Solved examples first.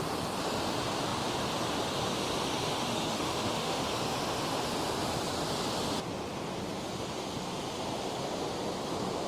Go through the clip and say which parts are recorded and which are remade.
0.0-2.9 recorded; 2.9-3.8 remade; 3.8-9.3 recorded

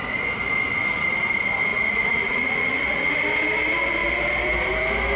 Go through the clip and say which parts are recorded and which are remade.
0.0-1.7 recorded; 1.7-3.1 remade; 3.1-5.2 recorded

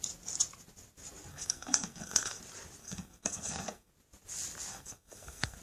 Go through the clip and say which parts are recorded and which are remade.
0.0-1.3 recorded; 1.3-2.4 remade; 2.4-2.8 recorded; 2.8-3.9 remade; 3.9-4.7 recorded; 4.7-5.6 remade

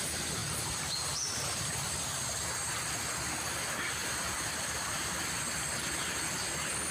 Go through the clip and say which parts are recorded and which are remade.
0.0-4.0 recorded; 4.0-5.1 remade; 5.1-6.9 recorded

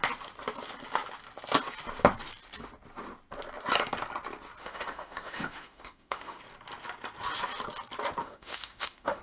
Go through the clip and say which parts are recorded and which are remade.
0.0-4.6 recorded; 4.6-6.4 remade; 6.4-8.2 recorded; 8.2-9.2 remade

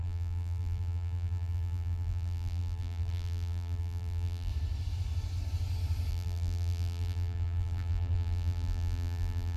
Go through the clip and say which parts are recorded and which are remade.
0.0-4.5 remade; 4.5-6.1 recorded; 6.1-9.6 remade

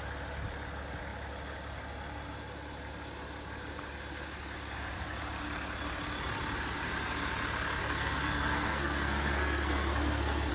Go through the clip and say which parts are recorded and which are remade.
0.0-7.8 recorded; 7.8-10.5 remade

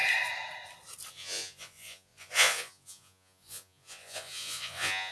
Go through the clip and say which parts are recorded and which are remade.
0.0-1.1 recorded; 1.1-5.1 remade